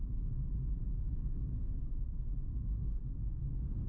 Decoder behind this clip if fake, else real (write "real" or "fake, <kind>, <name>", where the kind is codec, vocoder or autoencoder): real